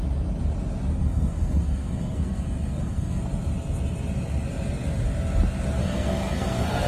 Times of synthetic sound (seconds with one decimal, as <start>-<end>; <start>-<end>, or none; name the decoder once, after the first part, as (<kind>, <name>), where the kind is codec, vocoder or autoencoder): 1.0-3.2 (codec, SNAC); 5.8-6.9